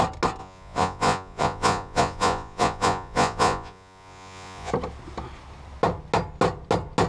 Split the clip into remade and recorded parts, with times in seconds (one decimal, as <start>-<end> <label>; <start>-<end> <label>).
0.0-0.4 recorded; 0.4-4.7 remade; 4.7-7.1 recorded